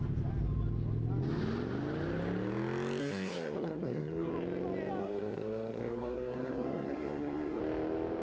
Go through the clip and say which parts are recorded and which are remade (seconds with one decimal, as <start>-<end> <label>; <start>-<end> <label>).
0.0-3.0 recorded; 3.0-4.3 remade; 4.3-5.0 recorded; 5.0-7.6 remade; 7.6-8.2 recorded